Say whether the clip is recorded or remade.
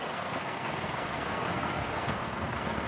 remade